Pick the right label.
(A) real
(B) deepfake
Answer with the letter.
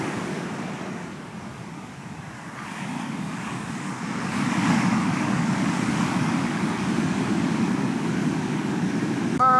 B